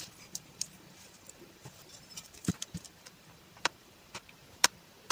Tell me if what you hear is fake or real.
fake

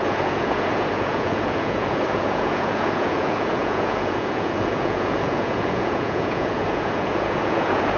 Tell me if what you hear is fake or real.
fake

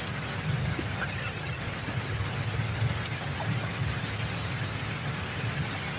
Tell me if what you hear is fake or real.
real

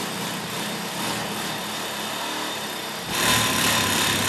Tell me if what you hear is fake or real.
real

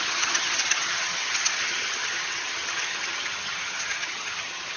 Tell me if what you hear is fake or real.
fake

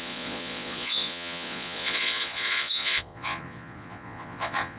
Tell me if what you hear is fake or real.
fake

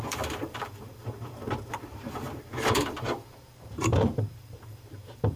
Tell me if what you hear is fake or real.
fake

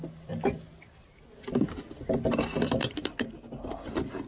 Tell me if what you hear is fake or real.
real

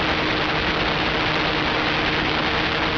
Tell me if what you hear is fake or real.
real